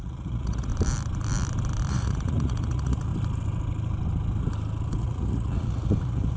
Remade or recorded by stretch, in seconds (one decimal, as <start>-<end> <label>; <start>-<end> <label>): 0.0-0.7 remade; 0.7-1.9 recorded; 1.9-3.1 remade; 3.1-5.0 recorded; 5.0-6.4 remade